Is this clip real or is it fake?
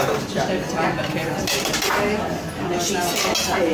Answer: real